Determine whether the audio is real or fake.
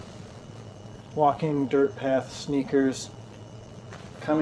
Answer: fake